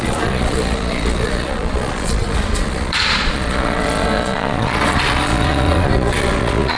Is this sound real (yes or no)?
no